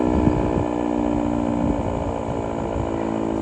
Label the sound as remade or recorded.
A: recorded